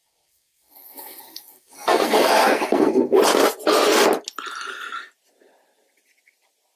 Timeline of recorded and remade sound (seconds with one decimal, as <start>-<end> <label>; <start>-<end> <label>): 0.0-3.2 remade; 3.2-6.8 recorded